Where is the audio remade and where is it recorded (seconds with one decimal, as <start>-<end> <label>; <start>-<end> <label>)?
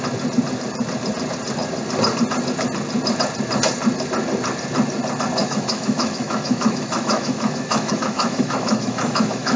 0.0-5.4 recorded; 5.4-9.6 remade